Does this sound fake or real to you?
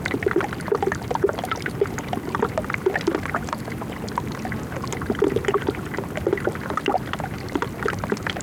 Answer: real